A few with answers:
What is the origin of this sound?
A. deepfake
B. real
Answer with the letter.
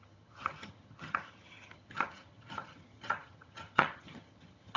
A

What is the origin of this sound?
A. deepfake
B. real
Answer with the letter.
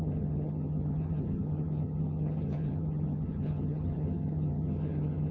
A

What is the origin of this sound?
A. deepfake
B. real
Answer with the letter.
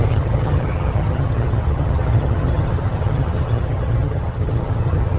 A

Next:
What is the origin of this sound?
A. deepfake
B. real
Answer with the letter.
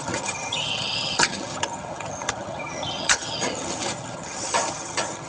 A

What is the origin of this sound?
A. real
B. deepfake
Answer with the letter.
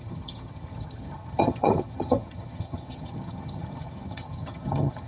B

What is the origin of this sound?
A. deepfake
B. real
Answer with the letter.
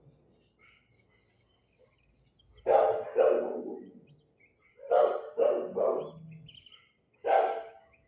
B